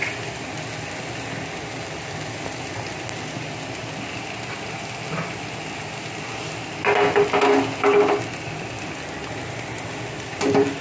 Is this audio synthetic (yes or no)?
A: no